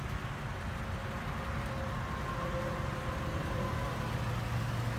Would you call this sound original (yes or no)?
yes